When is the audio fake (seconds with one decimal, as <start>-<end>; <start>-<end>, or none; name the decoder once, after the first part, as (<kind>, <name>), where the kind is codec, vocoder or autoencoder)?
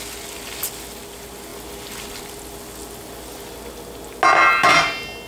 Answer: none